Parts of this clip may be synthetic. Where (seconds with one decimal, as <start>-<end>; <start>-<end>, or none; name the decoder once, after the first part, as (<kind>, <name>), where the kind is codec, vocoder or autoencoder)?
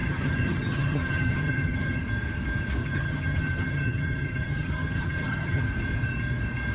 0.0-2.0 (vocoder, HiFi-GAN); 2.8-5.6